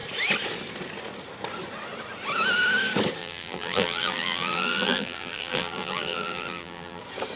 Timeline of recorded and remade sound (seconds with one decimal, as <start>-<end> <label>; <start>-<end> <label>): 0.0-3.2 recorded; 3.2-7.0 remade; 7.0-7.4 recorded